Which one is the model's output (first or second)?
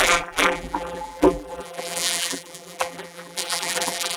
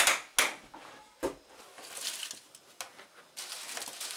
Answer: first